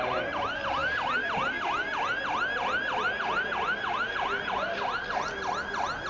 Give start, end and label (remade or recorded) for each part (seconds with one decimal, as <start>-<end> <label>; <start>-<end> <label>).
0.0-6.1 recorded